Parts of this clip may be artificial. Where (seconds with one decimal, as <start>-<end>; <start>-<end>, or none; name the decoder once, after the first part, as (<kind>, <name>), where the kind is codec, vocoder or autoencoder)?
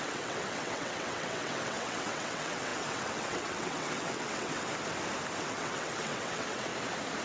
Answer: 0.0-4.7 (vocoder, WaveNeXt); 5.4-6.7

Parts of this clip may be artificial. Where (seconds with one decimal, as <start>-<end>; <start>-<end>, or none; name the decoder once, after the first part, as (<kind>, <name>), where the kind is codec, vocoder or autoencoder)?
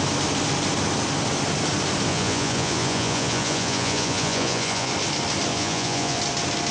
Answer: 2.1-4.9 (vocoder, Vocos); 5.5-6.2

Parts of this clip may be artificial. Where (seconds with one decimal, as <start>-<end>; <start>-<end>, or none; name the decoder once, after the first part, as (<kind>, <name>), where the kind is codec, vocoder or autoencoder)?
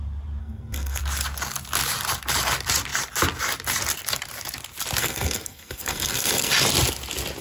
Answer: 0.4-1.0 (codec, SNAC); 5.0-6.5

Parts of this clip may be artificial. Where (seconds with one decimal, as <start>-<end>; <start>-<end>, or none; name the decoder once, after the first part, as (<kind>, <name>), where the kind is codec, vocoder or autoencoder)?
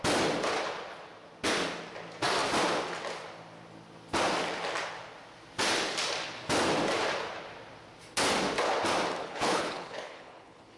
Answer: 9.2-10.8 (codec, HILCodec)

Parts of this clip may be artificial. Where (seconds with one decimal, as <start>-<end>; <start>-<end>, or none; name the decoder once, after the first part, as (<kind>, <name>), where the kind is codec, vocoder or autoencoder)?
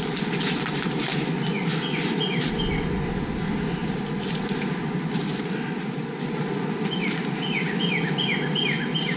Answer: 1.7-2.4 (vocoder, BigVGAN v2); 3.8-8.0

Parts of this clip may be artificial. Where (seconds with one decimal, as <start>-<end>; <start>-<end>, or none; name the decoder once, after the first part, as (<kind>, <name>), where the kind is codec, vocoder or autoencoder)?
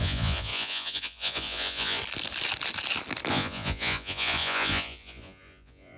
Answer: 0.0-2.0 (vocoder, Vocos); 3.3-6.0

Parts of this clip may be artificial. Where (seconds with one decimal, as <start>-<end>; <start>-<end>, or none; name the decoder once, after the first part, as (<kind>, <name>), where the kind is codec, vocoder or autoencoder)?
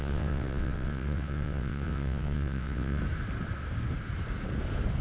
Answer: 0.0-3.0 (vocoder, WaveNeXt)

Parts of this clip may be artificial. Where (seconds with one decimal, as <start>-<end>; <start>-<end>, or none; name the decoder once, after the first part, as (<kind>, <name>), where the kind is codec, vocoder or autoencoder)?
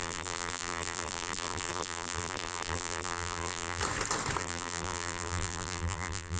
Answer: 0.0-3.8 (vocoder, BigVGAN v2); 4.4-6.4